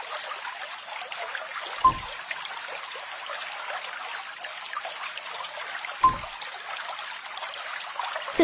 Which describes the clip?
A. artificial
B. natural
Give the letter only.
B